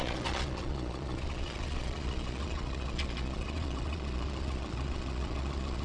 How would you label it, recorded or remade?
remade